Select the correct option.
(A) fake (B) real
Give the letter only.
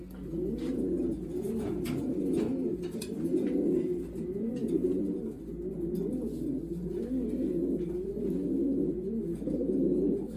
B